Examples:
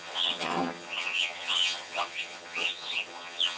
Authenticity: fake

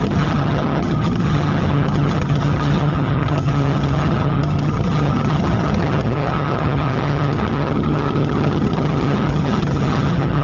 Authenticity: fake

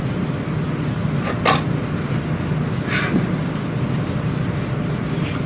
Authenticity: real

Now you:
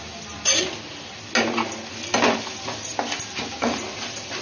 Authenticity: real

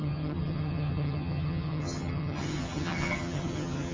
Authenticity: fake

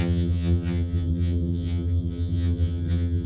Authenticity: fake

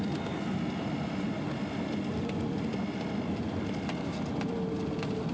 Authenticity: real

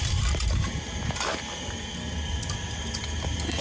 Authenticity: real